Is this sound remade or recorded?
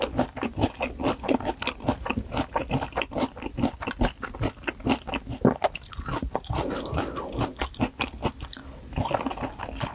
recorded